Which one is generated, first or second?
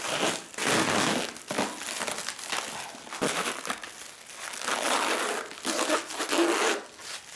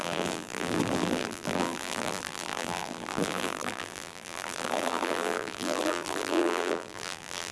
second